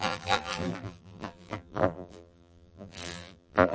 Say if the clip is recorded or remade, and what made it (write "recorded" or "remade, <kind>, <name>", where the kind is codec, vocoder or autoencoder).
remade, vocoder, BigVGAN v2